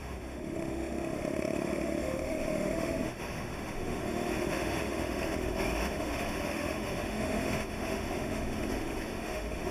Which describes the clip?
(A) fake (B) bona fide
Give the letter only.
A